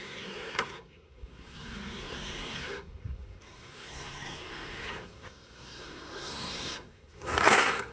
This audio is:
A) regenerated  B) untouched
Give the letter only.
A